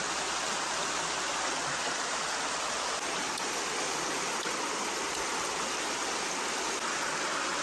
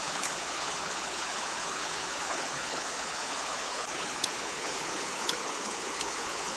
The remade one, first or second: second